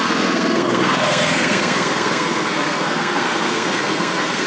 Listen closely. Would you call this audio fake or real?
fake